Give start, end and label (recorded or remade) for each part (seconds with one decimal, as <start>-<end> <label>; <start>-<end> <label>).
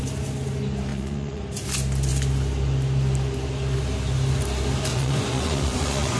0.0-0.9 recorded; 0.9-1.4 remade; 1.4-4.9 recorded; 4.9-6.2 remade